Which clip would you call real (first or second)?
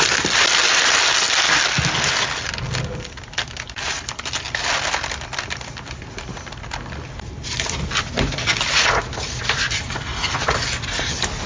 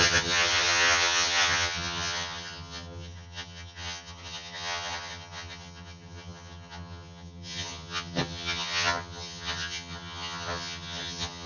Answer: first